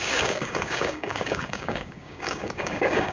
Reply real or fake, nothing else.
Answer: fake